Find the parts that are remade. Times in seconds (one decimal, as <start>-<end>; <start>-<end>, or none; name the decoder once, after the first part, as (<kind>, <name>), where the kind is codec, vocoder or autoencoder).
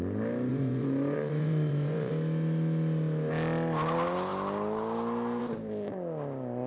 0.5-2.1 (vocoder, Vocos)